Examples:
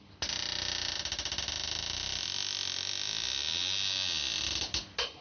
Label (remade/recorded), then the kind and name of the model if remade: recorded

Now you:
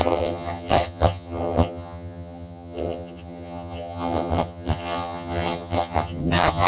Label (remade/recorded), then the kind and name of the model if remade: remade, vocoder, HiFi-GAN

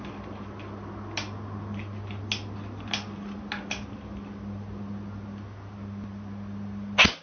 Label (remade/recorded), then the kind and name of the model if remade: recorded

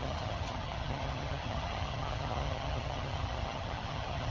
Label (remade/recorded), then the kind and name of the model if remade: remade, vocoder, HiFi-GAN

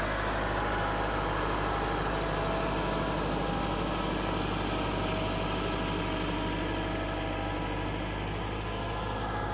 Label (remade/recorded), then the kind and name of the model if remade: recorded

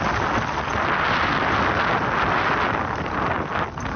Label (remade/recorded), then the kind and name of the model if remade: recorded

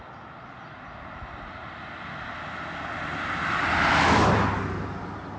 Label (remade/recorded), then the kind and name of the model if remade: recorded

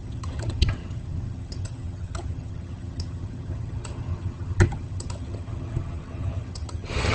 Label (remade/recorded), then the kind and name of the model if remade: remade, vocoder, HiFi-GAN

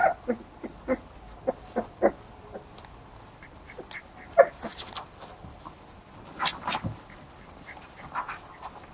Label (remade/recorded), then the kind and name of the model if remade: recorded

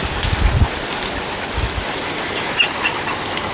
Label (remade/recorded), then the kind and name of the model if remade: recorded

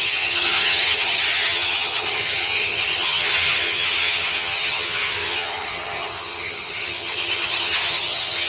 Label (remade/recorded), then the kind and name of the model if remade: remade, vocoder, HiFi-GAN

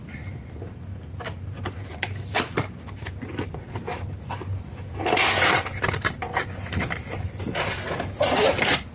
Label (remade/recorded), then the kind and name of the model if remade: recorded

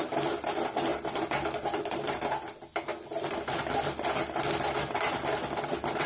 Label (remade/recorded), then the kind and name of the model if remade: recorded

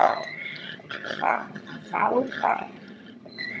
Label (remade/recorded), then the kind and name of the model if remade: remade, vocoder, HiFi-GAN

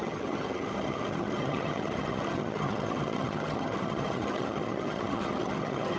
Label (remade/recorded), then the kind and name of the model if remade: remade, vocoder, HiFi-GAN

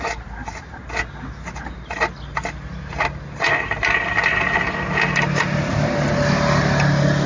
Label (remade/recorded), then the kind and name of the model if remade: recorded